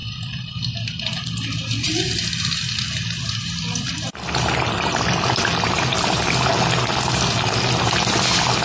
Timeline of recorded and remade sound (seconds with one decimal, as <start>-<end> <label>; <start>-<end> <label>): 0.0-8.6 recorded